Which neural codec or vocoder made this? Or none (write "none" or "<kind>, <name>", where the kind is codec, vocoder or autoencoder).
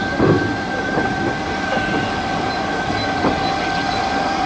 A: none